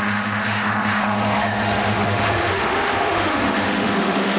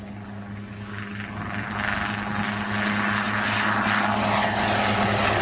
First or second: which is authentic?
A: second